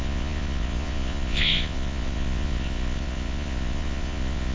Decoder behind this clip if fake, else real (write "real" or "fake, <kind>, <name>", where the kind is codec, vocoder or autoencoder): fake, vocoder, Vocos